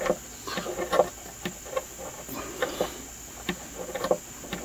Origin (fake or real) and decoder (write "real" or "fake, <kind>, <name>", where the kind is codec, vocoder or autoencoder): real